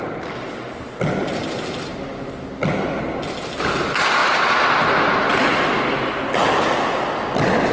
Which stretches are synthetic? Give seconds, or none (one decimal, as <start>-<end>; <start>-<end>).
none